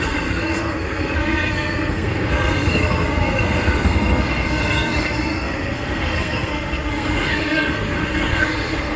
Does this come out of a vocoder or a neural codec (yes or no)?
yes